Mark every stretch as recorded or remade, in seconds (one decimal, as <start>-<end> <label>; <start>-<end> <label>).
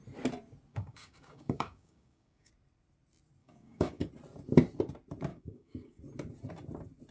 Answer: 0.0-0.7 recorded; 0.7-2.5 remade; 2.5-3.4 recorded; 3.4-4.1 remade; 4.1-5.3 recorded; 5.3-6.0 remade; 6.0-7.1 recorded